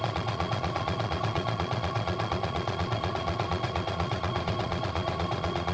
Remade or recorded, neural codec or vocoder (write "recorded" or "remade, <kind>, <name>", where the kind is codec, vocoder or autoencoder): remade, vocoder, Vocos